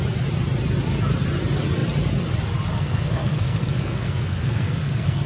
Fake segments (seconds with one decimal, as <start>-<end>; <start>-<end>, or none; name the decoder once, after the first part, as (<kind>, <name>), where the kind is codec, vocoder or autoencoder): 2.7-5.3 (codec, SNAC)